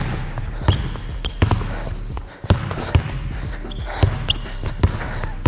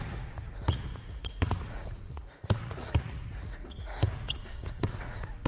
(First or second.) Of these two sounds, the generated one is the second